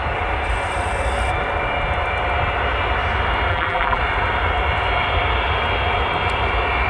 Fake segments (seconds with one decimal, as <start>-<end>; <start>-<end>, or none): 3.5-4.0